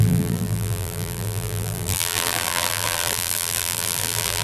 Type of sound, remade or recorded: remade